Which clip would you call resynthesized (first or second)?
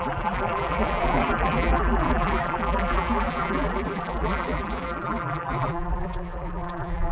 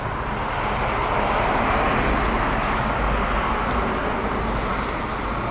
first